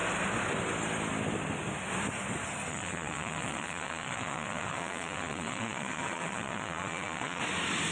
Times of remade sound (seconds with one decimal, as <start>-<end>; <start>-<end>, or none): 2.7-7.4